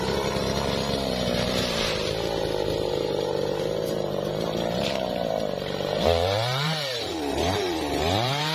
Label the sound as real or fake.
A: fake